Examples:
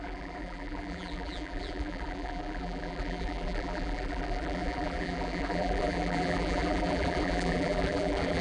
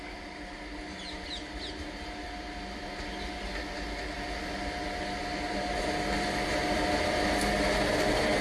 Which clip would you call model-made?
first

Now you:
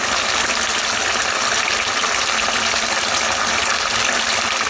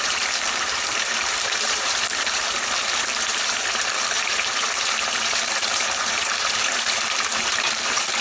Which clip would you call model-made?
second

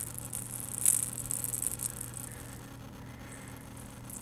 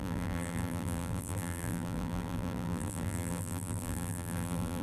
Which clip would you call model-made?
second